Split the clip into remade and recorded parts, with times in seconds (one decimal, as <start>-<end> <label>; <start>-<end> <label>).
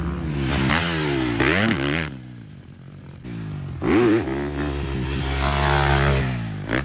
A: 0.0-6.8 recorded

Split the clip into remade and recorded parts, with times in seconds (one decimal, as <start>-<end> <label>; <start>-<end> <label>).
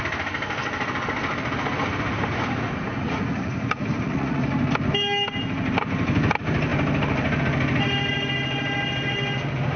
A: 0.0-2.9 recorded; 2.9-4.5 remade; 4.5-9.8 recorded